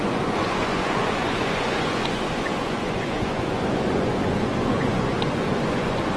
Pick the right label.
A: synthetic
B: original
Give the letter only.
A